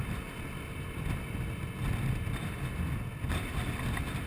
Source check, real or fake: real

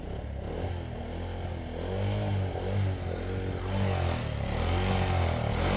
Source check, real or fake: real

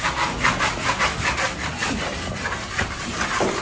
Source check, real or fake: fake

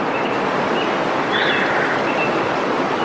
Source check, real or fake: real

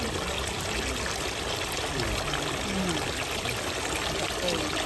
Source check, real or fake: real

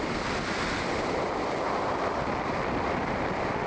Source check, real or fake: fake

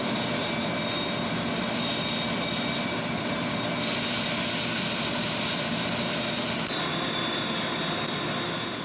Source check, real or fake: real